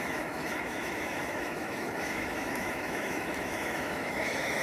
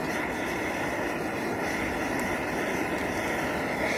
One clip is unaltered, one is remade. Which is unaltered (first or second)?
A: second